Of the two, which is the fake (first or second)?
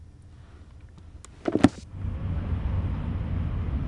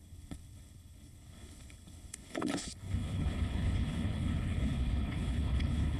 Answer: second